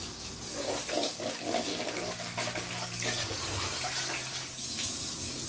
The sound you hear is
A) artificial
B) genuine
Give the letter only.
A